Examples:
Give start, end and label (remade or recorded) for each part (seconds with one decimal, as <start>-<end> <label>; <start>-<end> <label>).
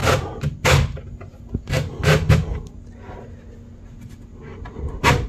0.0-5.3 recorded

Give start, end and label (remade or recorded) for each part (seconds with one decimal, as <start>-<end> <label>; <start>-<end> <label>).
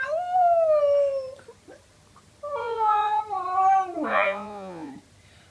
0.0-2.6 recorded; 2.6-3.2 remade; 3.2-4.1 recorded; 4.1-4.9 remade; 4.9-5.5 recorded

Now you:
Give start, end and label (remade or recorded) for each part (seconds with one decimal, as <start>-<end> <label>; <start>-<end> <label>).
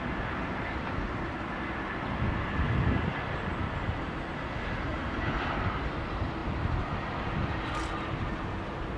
0.0-4.9 recorded; 4.9-5.8 remade; 5.8-9.0 recorded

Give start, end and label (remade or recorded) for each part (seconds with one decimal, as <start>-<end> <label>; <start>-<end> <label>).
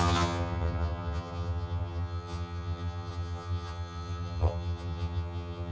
0.0-5.7 remade